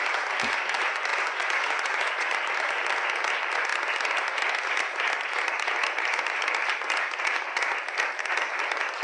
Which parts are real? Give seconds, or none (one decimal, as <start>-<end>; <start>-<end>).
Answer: 0.0-1.1; 2.5-9.0